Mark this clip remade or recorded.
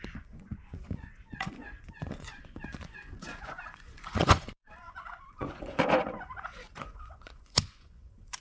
remade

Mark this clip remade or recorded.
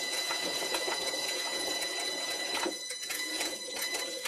remade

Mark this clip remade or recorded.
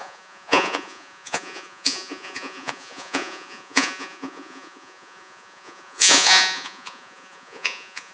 remade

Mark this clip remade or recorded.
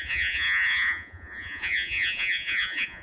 remade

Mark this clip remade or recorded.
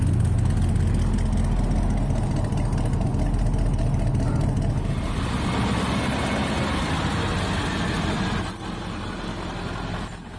recorded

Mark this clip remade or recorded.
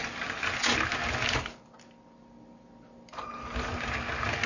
recorded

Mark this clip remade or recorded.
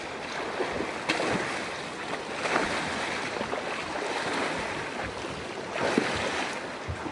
recorded